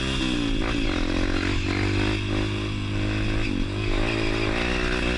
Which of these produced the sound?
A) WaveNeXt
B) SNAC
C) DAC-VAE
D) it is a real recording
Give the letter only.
D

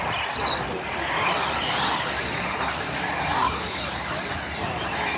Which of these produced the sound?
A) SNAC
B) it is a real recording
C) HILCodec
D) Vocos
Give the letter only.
B